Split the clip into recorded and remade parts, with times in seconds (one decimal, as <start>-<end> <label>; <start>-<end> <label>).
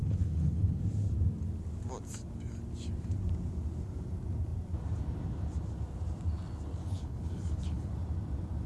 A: 0.0-0.8 remade; 0.8-6.8 recorded; 6.8-7.9 remade; 7.9-8.7 recorded